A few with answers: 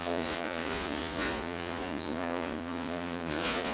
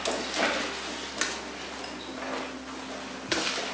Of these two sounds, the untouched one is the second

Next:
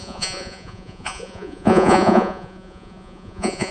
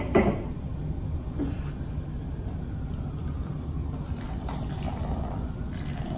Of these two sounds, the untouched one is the second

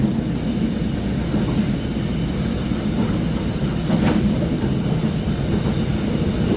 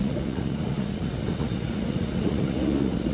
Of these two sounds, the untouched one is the first